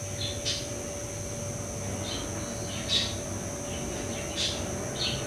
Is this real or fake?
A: real